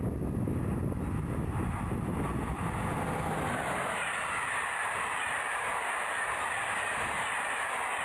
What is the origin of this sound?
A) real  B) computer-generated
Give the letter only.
A